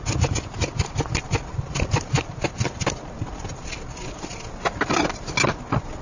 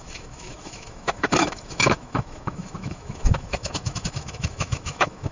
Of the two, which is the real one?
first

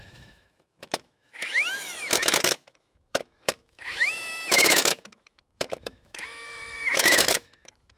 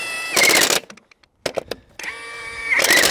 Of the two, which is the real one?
second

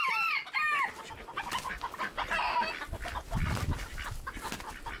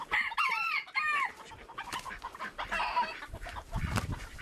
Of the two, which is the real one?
first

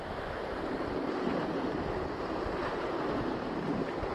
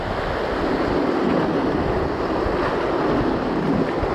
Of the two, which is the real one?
second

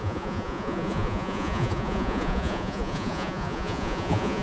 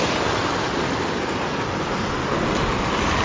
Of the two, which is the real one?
second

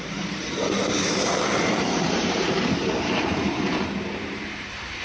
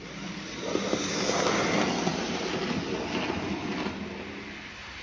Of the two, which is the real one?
second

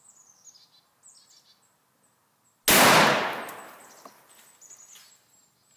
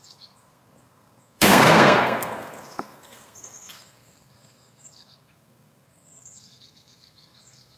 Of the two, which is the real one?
first